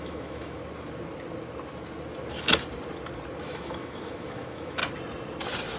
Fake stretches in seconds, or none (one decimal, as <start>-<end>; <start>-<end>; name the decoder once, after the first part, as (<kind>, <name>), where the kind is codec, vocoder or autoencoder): 0.0-0.6 (autoencoder, DAC-VAE); 3.4-4.8